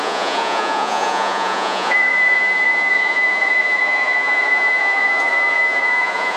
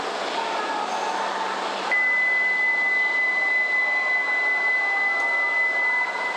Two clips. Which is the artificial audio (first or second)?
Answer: first